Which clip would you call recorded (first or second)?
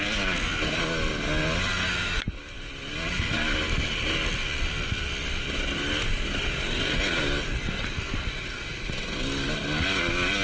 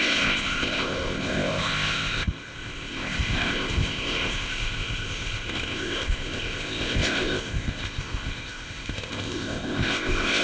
first